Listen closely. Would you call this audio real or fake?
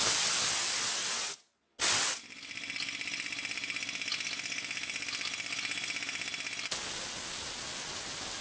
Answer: real